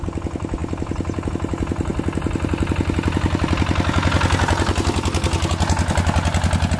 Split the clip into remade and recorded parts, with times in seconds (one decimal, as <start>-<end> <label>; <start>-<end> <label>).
0.0-6.8 recorded